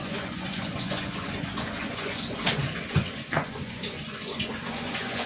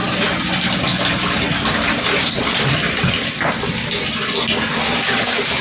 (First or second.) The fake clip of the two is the first